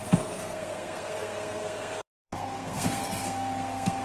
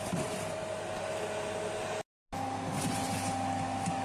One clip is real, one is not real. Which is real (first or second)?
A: second